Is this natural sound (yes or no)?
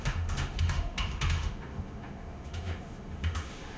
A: no